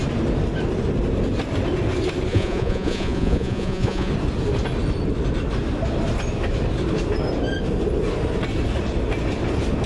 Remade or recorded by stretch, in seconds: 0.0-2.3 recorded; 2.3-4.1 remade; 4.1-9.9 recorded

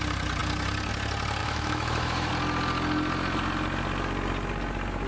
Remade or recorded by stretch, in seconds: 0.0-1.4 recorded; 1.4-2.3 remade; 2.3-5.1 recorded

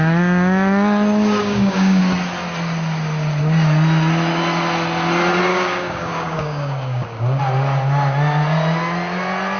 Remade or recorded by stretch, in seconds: 0.0-1.4 recorded; 1.4-2.0 remade; 2.0-5.5 recorded; 5.5-7.4 remade; 7.4-9.6 recorded

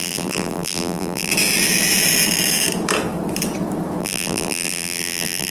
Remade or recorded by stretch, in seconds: 0.0-1.3 remade; 1.3-4.0 recorded; 4.0-5.5 remade

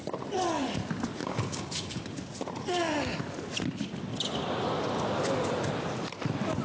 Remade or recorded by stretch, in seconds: 0.0-1.2 recorded; 1.2-2.2 remade; 2.2-6.6 recorded

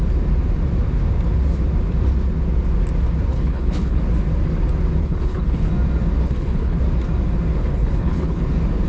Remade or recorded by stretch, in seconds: 0.0-3.3 recorded; 3.3-4.0 remade; 4.0-5.0 recorded; 5.0-5.7 remade; 5.7-6.2 recorded; 6.2-6.8 remade; 6.8-7.6 recorded; 7.6-8.4 remade; 8.4-8.9 recorded